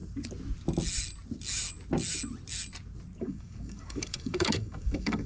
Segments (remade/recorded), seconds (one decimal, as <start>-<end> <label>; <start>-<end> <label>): 0.0-3.2 recorded; 3.2-5.3 remade